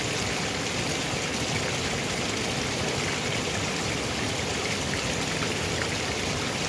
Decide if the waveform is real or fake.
real